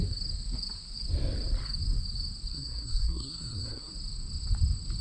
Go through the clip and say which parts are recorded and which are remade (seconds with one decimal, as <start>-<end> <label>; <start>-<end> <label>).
0.0-2.5 recorded; 2.5-3.9 remade; 3.9-5.0 recorded